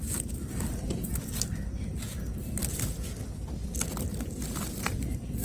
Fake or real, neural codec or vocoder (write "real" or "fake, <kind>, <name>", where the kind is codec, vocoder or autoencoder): real